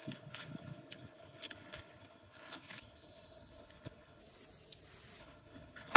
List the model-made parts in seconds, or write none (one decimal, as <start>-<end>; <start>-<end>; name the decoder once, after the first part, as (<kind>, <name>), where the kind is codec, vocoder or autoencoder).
0.0-4.2 (codec, HILCodec); 5.2-6.0